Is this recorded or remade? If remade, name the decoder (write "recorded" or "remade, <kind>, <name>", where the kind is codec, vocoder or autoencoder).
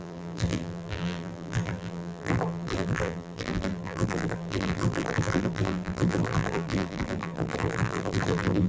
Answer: remade, vocoder, BigVGAN v2